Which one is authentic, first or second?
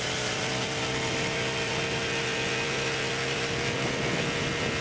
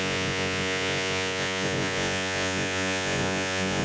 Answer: first